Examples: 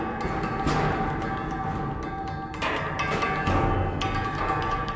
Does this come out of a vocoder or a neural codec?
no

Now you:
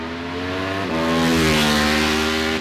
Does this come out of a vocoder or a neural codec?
no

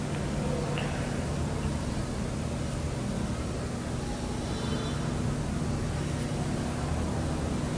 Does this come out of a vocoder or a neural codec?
no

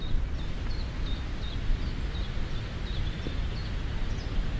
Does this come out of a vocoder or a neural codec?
no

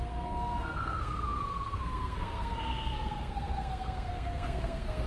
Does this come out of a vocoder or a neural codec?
yes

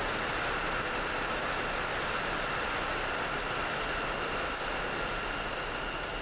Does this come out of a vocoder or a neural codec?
no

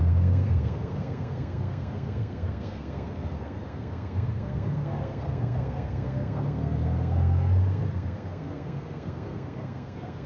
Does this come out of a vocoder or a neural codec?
yes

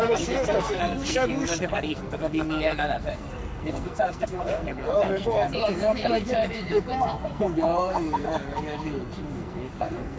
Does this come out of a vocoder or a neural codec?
yes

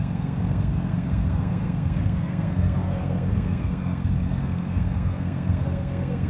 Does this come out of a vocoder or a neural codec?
yes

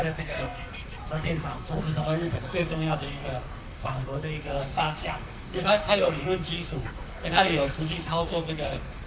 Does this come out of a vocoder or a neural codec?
yes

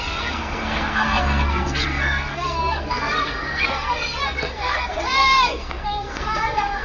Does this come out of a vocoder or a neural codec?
yes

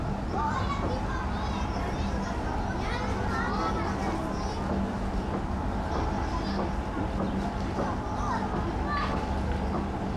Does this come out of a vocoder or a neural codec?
no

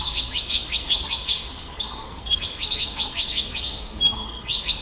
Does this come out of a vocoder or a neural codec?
yes